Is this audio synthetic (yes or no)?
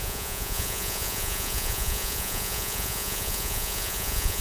yes